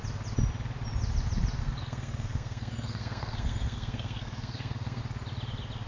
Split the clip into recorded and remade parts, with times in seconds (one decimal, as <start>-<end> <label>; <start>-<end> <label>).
0.0-1.6 recorded; 1.6-5.0 remade; 5.0-5.9 recorded

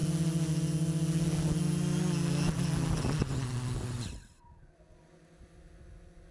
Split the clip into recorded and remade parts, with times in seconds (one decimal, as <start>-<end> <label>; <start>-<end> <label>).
0.0-6.3 recorded